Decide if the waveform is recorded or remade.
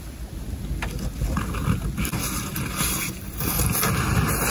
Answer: recorded